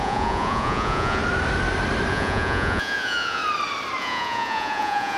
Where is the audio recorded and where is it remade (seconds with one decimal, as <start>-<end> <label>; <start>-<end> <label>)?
0.0-1.2 remade; 1.2-2.1 recorded; 2.1-3.4 remade; 3.4-4.0 recorded; 4.0-5.2 remade